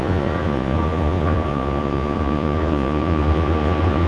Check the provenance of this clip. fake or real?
fake